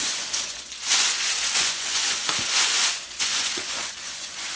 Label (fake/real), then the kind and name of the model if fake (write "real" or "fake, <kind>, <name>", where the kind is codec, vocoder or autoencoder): fake, vocoder, Vocos